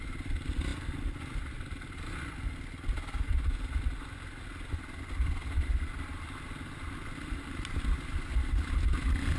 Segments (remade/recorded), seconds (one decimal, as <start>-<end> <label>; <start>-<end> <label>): 0.0-9.4 recorded